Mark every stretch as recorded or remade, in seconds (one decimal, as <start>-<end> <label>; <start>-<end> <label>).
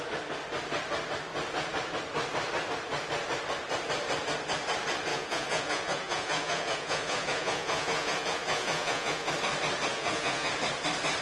0.0-5.1 recorded; 5.1-9.3 remade; 9.3-9.9 recorded; 9.9-10.5 remade; 10.5-11.2 recorded